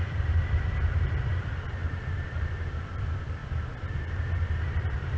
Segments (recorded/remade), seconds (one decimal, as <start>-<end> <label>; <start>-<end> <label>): 0.0-3.4 remade; 3.4-4.6 recorded; 4.6-5.2 remade